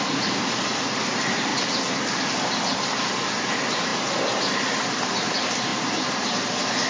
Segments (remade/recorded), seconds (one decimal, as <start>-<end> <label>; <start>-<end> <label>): 0.0-5.7 recorded; 5.7-6.4 remade; 6.4-6.9 recorded